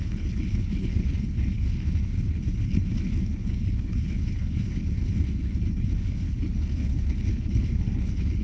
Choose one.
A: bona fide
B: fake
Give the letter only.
B